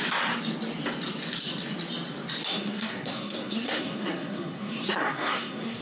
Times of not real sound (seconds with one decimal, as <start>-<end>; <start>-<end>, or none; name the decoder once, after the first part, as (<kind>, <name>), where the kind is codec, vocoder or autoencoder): 2.5-5.8 (codec, SNAC)